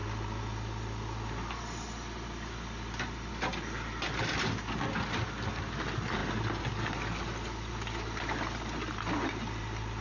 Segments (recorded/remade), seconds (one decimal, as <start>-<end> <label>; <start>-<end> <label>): 0.0-10.0 recorded